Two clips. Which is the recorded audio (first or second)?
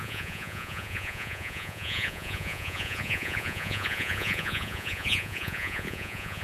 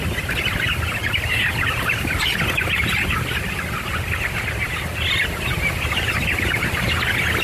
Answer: second